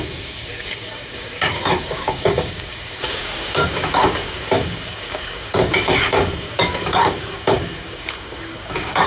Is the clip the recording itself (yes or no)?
no